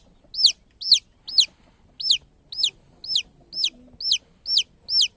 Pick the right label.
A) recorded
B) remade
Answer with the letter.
A